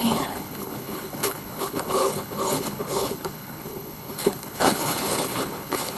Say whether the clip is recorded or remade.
remade